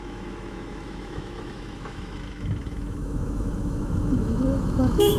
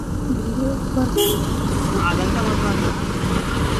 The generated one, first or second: first